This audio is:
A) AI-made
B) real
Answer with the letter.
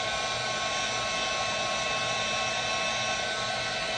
B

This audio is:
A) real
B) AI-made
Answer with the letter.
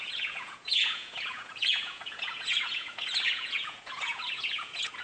B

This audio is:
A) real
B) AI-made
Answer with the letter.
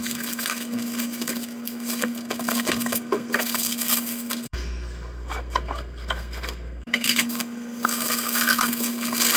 B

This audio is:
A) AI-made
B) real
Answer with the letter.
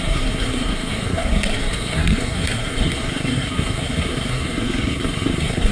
A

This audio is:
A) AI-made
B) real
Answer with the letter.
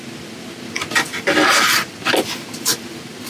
A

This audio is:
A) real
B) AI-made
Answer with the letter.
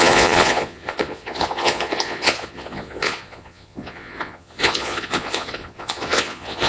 B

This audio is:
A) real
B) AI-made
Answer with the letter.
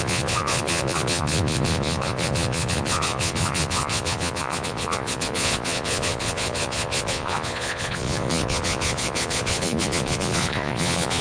B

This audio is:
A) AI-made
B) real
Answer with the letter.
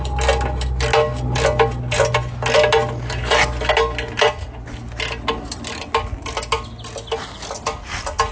B